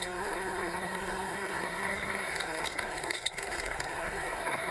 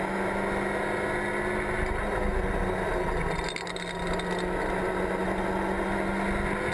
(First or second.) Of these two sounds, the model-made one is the first